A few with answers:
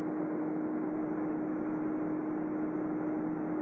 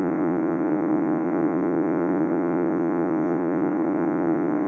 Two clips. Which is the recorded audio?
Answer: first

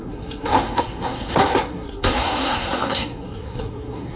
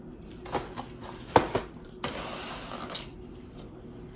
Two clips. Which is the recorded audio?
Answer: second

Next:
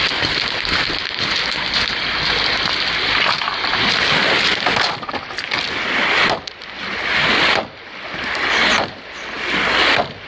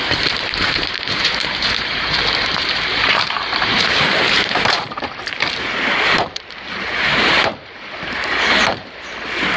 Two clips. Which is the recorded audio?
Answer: first